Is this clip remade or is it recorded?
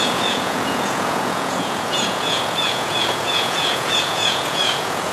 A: remade